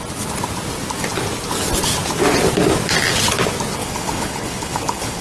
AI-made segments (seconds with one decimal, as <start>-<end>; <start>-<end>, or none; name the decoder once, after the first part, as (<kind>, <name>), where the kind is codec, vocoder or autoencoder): 3.8-5.2 (codec, HILCodec)

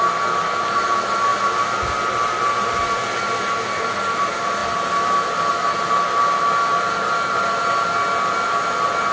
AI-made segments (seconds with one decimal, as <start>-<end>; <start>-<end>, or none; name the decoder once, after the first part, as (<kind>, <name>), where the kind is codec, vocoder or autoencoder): none

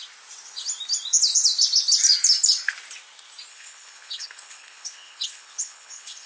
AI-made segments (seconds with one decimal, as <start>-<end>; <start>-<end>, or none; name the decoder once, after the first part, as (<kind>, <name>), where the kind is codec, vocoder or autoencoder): 3.5-6.3 (codec, HILCodec)